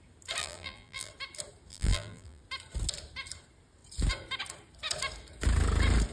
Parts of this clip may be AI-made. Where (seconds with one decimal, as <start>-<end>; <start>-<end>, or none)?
0.4-1.1; 1.7-2.4